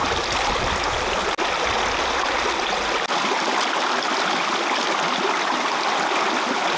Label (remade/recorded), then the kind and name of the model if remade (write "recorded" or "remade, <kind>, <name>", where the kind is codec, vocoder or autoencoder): recorded